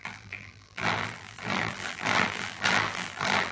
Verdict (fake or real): fake